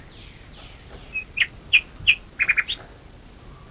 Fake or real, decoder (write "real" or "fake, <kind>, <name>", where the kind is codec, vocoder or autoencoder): real